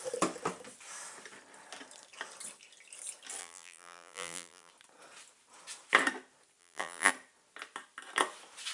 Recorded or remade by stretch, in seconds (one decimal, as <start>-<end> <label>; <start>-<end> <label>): 0.0-3.4 recorded; 3.4-4.7 remade; 4.7-6.6 recorded; 6.6-7.1 remade; 7.1-8.7 recorded

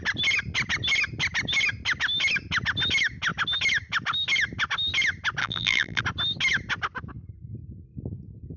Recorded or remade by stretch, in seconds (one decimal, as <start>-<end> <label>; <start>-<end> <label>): 0.0-5.4 recorded; 5.4-6.0 remade; 6.0-8.6 recorded